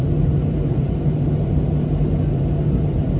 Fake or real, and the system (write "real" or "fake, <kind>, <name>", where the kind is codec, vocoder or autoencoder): real